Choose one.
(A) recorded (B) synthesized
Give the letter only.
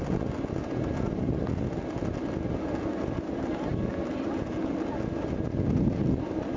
A